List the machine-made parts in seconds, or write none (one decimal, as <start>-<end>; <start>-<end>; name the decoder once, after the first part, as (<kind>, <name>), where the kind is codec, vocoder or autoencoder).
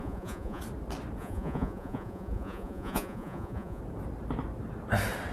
0.0-0.6 (vocoder, Vocos); 1.2-3.8